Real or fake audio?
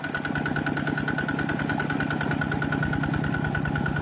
real